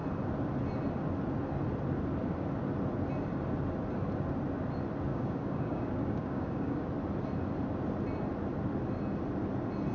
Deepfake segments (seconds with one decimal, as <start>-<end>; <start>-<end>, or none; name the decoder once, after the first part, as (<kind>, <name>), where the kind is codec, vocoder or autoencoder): 5.1-6.9 (codec, DAC)